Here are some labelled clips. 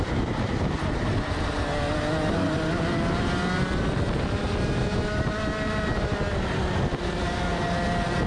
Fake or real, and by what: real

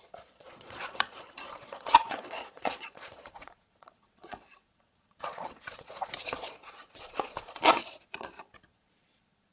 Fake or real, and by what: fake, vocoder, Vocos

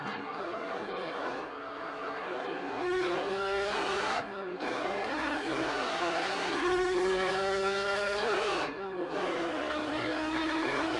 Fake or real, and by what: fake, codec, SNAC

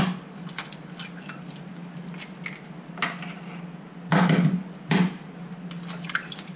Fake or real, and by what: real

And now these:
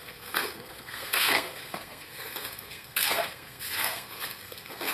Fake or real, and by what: fake, codec, SNAC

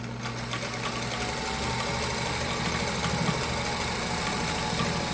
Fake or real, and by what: real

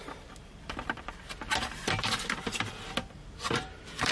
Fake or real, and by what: fake, vocoder, BigVGAN v2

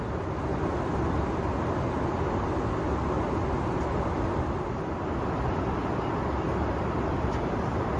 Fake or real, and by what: real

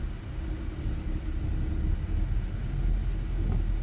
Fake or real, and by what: real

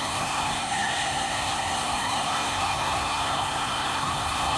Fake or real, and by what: fake, codec, SNAC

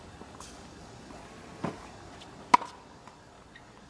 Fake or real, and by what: real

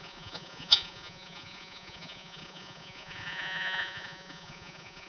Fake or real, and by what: fake, vocoder, Vocos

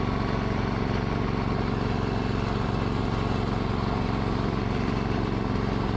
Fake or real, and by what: real